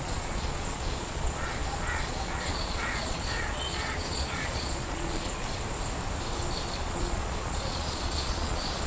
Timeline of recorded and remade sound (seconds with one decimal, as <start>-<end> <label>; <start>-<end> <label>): 0.0-5.4 remade; 5.4-6.6 recorded; 6.6-8.9 remade